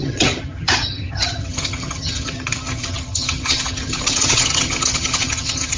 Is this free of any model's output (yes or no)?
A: no